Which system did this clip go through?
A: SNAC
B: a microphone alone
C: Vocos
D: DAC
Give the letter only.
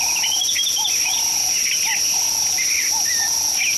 B